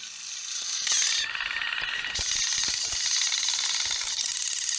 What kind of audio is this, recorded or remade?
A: recorded